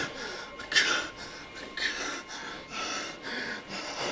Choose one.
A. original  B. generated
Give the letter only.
A